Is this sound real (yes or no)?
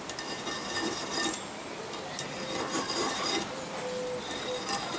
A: yes